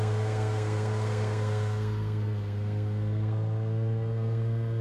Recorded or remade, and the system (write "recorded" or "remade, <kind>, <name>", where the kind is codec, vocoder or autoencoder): remade, codec, SNAC